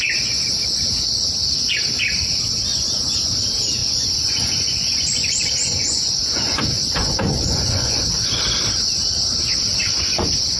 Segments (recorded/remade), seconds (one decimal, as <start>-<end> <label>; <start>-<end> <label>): 0.0-2.7 recorded; 2.7-3.4 remade; 3.4-3.8 recorded; 3.8-6.6 remade; 6.6-7.0 recorded; 7.0-8.0 remade; 8.0-9.7 recorded; 9.7-10.6 remade